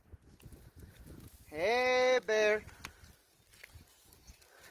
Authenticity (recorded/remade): recorded